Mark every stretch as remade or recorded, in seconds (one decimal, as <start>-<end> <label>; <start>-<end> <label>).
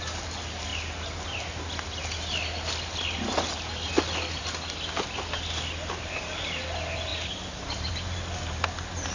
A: 0.0-9.1 recorded